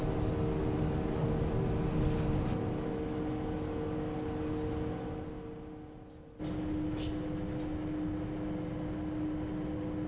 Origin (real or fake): real